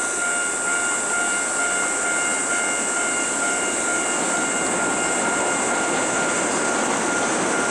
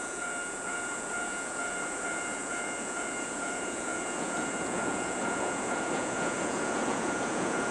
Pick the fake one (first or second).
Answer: second